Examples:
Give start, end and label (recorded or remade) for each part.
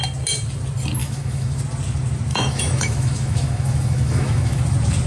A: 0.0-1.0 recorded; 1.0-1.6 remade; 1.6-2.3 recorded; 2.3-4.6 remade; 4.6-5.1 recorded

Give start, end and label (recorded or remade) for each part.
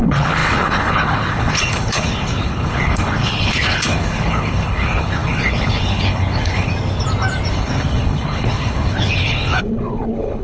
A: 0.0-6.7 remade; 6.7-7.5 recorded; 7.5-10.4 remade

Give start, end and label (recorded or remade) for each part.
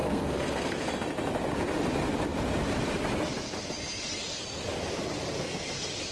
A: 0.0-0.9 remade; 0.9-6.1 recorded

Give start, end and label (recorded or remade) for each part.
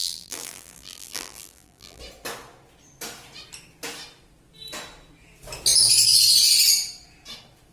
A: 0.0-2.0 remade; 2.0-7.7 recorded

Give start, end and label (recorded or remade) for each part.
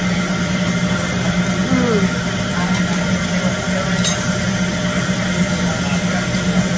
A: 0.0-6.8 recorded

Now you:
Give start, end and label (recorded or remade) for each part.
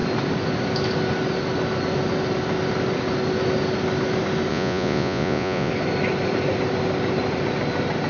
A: 0.0-4.5 recorded; 4.5-5.7 remade; 5.7-8.1 recorded